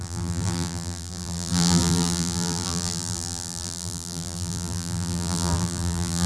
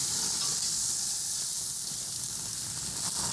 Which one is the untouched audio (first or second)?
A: second